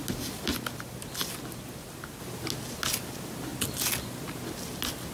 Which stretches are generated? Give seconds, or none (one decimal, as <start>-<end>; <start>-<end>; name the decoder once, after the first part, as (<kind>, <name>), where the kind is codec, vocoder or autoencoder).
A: none